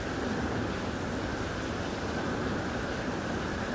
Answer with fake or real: real